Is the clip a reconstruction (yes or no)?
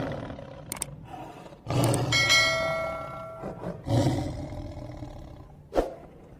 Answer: no